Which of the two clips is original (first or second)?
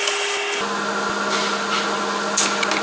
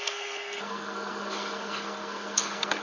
first